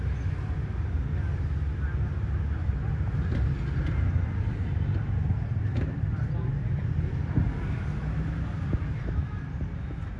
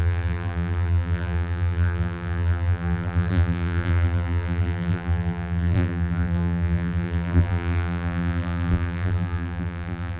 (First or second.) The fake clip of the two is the second